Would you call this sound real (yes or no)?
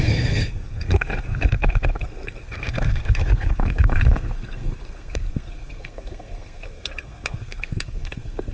no